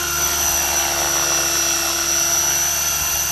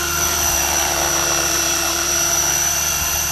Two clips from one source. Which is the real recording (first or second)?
first